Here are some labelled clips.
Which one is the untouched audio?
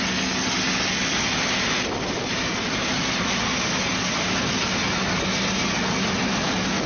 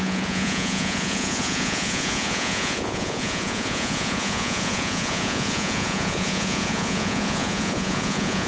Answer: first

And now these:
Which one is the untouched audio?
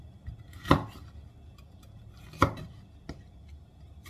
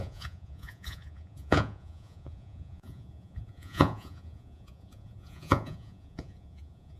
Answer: first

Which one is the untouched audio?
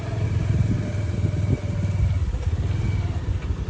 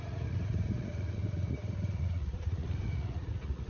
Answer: first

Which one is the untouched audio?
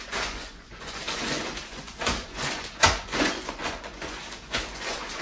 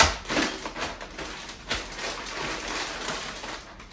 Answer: second